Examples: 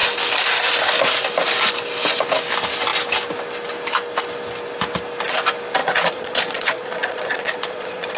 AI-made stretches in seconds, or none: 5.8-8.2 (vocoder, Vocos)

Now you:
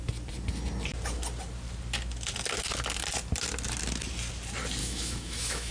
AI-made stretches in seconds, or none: 4.8-5.7 (autoencoder, DAC-VAE)

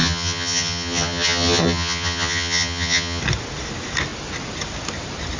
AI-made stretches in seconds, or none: 0.0-3.2 (vocoder, HiFi-GAN)

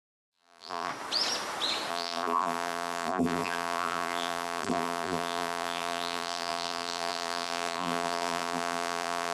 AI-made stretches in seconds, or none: 0.0-0.9 (vocoder, BigVGAN v2); 1.9-9.3

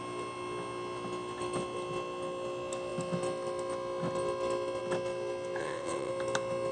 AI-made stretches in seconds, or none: 5.6-6.1 (vocoder, WaveNeXt)

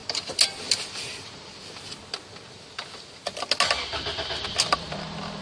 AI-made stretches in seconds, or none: none

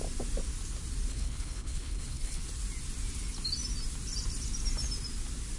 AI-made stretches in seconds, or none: 1.1-2.4 (codec, HILCodec)

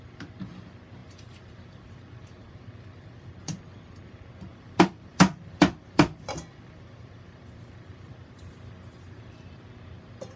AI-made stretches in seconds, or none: 1.0-3.3 (vocoder, BigVGAN v2); 4.5-9.7